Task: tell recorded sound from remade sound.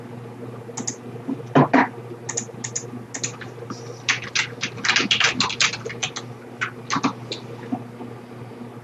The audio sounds recorded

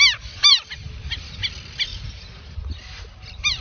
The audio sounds recorded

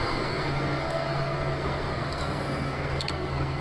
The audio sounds remade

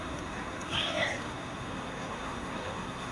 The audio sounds remade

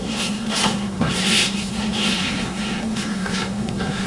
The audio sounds remade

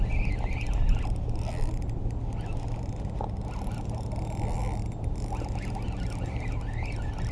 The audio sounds recorded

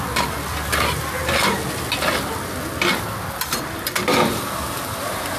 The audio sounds recorded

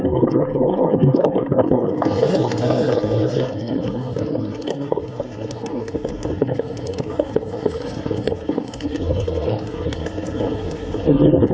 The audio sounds remade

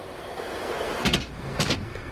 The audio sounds remade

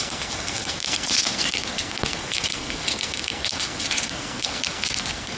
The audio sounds remade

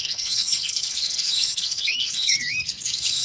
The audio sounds remade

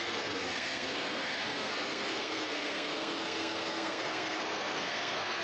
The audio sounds remade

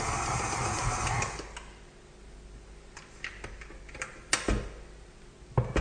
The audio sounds recorded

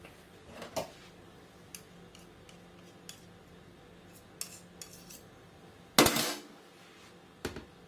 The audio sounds recorded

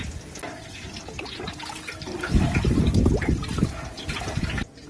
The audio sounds recorded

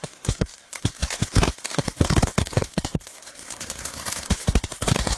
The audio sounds remade